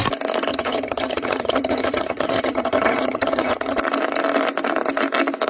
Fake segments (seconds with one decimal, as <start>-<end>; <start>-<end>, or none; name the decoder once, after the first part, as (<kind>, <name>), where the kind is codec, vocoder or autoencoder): 0.5-3.8 (vocoder, HiFi-GAN)